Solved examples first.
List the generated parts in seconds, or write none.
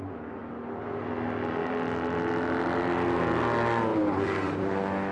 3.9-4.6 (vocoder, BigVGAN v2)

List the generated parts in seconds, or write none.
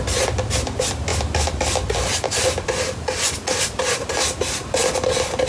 none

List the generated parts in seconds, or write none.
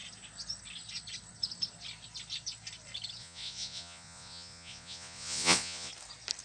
3.2-5.9 (vocoder, Vocos)